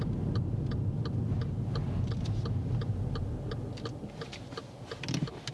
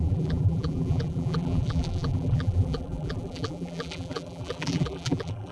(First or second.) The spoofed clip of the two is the second